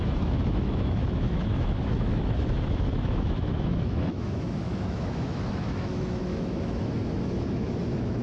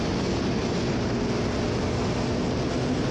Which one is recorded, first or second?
second